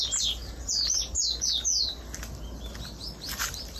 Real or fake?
real